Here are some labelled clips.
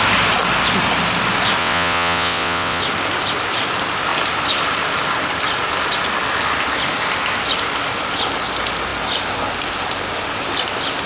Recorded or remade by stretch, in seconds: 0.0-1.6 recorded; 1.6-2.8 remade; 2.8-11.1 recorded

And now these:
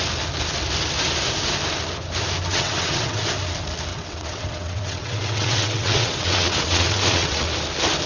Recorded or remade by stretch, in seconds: 0.0-2.5 recorded; 2.5-3.2 remade; 3.2-3.9 recorded; 3.9-7.5 remade; 7.5-8.1 recorded